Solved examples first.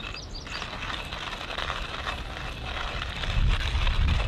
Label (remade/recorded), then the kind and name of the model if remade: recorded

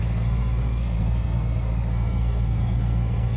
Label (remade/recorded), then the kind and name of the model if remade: remade, codec, SNAC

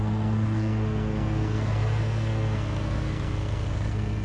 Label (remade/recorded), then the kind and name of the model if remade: remade, codec, SNAC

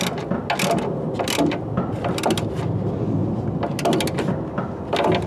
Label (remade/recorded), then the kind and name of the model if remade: recorded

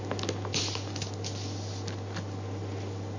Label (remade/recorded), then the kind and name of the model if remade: recorded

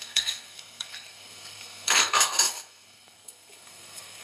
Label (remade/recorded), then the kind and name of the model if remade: remade, codec, SNAC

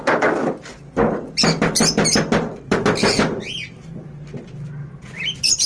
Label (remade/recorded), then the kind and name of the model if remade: recorded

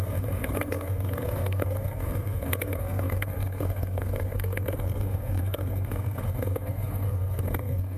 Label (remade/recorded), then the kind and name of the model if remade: remade, codec, SNAC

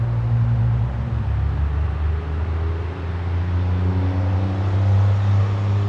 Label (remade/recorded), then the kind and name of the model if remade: recorded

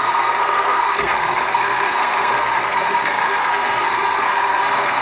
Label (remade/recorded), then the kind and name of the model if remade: remade, codec, SNAC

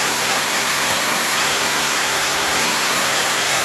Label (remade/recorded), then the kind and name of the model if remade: remade, codec, SNAC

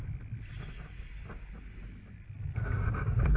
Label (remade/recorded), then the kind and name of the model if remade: recorded